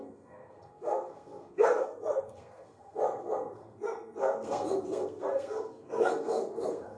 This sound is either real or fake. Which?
fake